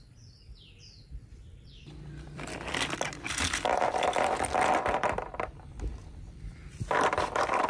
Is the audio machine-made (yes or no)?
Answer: yes